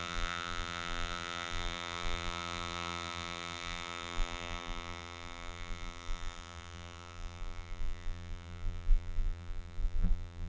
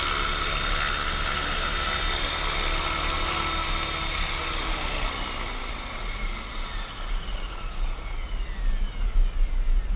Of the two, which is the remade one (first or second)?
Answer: first